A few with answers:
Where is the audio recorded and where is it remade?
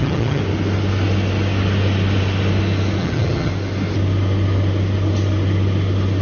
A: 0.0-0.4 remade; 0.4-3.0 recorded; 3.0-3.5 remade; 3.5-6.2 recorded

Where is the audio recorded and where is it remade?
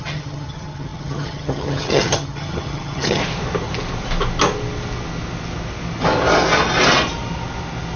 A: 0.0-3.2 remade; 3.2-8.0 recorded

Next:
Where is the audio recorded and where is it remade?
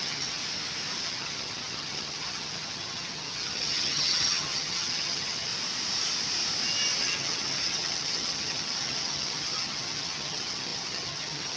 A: 0.0-0.4 remade; 0.4-1.0 recorded; 1.0-5.5 remade; 5.5-7.0 recorded; 7.0-11.6 remade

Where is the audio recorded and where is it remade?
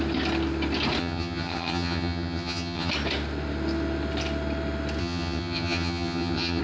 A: 0.0-1.0 recorded; 1.0-2.9 remade; 2.9-5.0 recorded; 5.0-6.6 remade